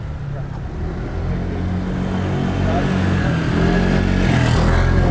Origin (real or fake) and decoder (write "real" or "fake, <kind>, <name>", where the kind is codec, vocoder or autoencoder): real